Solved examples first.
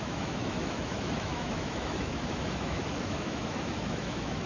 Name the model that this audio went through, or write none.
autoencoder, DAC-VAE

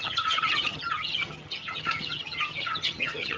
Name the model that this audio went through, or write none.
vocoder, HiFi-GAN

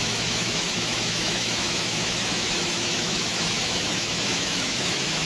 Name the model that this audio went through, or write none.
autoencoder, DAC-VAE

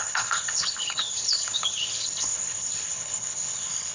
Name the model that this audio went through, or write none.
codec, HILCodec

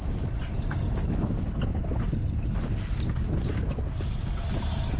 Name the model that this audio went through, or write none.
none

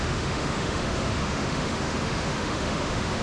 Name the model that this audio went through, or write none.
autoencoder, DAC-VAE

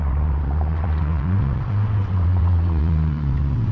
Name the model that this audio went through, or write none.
vocoder, WaveNeXt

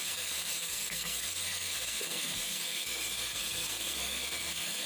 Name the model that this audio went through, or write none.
codec, SNAC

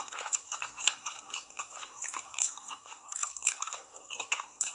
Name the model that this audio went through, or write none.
codec, SNAC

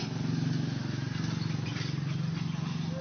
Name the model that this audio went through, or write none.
none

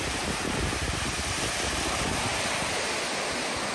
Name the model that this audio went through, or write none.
none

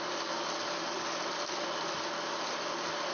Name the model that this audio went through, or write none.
none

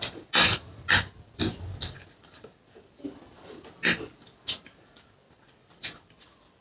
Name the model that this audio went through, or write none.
none